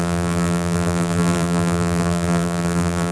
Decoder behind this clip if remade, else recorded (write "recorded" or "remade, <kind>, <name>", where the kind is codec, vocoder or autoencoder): remade, vocoder, BigVGAN v2